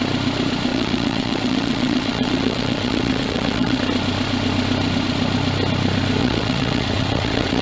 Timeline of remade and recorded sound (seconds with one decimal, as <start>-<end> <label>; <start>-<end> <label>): 0.0-0.7 recorded; 0.7-3.8 remade; 3.8-6.2 recorded; 6.2-7.6 remade